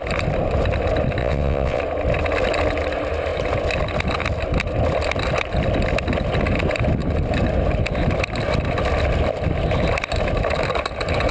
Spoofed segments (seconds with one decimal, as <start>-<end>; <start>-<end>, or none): 1.2-1.8